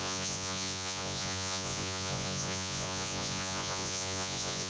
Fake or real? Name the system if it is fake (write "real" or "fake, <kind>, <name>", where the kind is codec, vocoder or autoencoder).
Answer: fake, vocoder, Vocos